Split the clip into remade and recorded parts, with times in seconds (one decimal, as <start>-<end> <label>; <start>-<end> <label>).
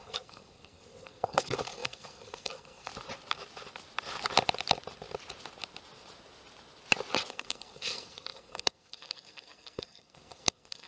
0.0-2.9 remade; 2.9-7.3 recorded; 7.3-10.9 remade